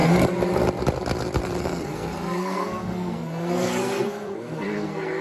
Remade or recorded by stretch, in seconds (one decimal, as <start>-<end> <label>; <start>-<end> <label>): 0.0-1.6 recorded; 1.6-5.2 remade